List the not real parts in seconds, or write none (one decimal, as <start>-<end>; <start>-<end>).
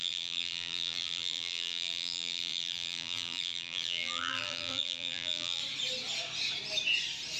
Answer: 0.0-5.6